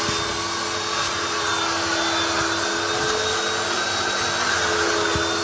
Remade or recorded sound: recorded